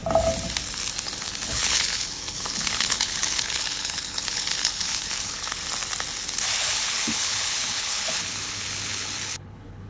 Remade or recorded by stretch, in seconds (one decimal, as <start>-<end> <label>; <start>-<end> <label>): 0.0-1.2 recorded; 1.2-5.6 remade; 5.6-6.6 recorded; 6.6-9.9 remade